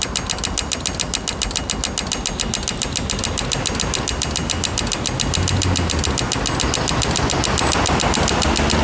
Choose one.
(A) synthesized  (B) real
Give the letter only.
B